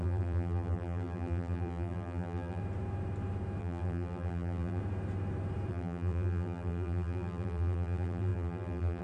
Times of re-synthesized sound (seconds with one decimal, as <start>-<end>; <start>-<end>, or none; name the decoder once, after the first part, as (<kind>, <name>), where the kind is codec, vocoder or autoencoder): 0.0-2.6 (vocoder, BigVGAN v2); 3.6-4.8; 5.7-9.0